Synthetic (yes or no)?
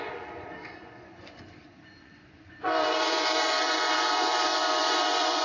yes